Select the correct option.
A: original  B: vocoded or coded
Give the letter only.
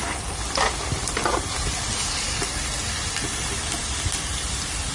A